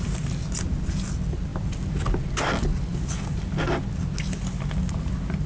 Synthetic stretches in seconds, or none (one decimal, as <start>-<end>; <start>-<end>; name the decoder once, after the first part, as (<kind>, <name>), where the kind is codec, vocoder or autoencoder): none